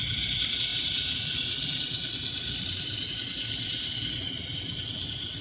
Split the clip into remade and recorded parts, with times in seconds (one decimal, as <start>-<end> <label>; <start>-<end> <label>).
0.0-5.4 recorded